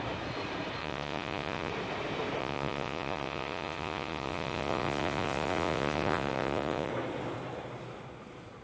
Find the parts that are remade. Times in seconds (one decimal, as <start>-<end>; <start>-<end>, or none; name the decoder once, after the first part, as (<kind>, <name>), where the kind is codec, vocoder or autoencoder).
0.8-1.7 (vocoder, Vocos); 2.4-6.9